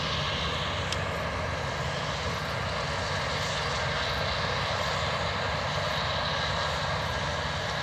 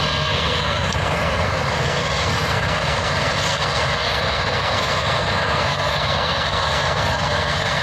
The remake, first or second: second